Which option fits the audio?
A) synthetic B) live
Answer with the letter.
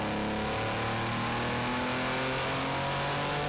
B